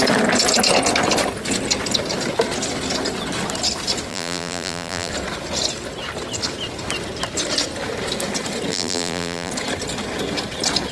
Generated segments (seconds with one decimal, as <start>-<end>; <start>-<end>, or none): 4.1-5.1; 8.7-9.5